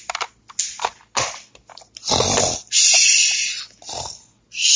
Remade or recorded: recorded